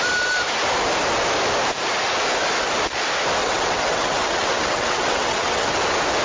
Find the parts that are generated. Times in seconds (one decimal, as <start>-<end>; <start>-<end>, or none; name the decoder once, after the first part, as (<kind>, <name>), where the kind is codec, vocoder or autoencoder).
3.4-5.8 (vocoder, WaveNeXt)